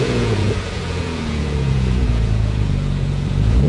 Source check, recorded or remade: remade